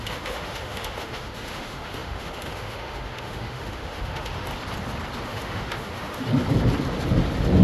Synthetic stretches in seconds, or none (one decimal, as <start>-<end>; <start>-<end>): 0.0-4.5; 5.2-6.3